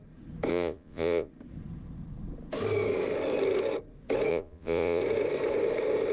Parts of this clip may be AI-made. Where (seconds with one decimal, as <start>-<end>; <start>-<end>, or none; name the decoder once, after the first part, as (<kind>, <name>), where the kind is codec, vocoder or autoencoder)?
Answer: 0.5-1.3 (vocoder, Vocos); 4.3-5.0